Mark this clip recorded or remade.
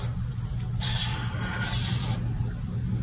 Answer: recorded